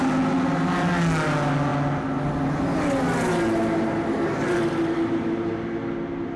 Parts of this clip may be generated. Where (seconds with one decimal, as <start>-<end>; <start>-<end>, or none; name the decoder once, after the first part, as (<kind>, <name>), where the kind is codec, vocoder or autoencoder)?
none